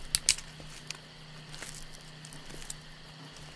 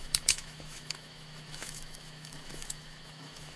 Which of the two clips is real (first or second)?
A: first